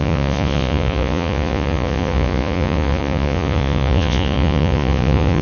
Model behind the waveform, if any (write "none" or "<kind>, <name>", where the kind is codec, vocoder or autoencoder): vocoder, Vocos